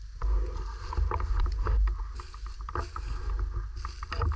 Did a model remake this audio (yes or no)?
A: no